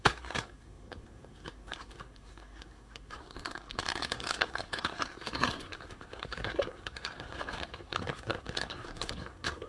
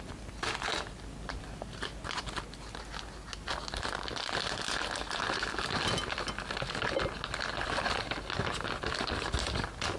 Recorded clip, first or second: second